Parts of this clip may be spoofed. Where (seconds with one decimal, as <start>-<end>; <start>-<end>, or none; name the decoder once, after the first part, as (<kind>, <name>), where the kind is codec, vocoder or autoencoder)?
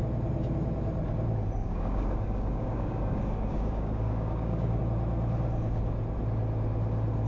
1.6-4.8 (codec, DAC)